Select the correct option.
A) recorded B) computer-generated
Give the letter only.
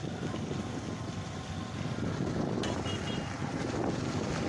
A